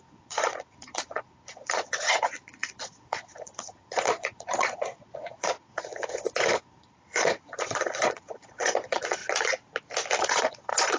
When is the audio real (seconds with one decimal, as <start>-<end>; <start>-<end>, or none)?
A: 9.2-10.2